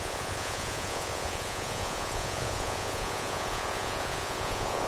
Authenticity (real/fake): fake